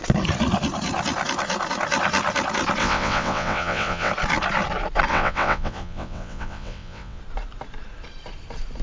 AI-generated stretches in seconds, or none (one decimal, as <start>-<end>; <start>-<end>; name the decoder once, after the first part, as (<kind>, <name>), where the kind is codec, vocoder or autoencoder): 2.8-4.1 (vocoder, WaveNeXt); 5.1-7.2